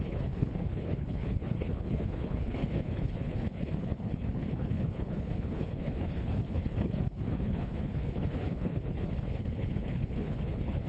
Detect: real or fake fake